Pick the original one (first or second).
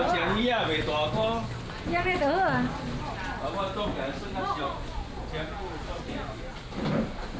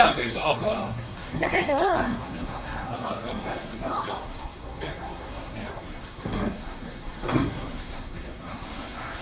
first